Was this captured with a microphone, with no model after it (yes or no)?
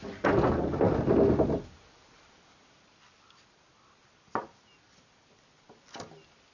yes